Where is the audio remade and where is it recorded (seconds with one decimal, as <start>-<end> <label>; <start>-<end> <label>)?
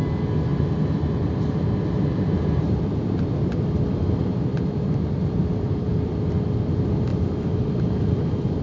0.0-0.5 recorded; 0.5-2.9 remade; 2.9-4.5 recorded; 4.5-6.1 remade; 6.1-7.1 recorded; 7.1-8.6 remade